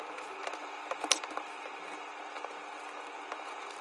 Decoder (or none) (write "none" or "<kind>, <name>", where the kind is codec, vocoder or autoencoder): none